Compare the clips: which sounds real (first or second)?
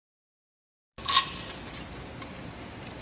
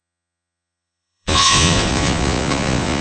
first